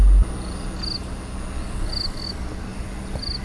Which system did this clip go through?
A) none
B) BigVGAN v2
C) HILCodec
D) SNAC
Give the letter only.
A